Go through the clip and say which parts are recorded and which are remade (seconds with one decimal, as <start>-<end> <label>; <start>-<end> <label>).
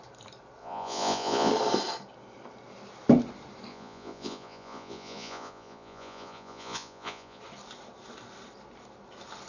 0.0-0.6 recorded; 0.6-1.5 remade; 1.5-3.7 recorded; 3.7-7.4 remade; 7.4-9.5 recorded